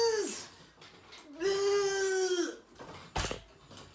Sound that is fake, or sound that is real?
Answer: real